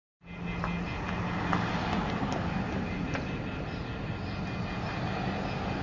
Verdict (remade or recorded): recorded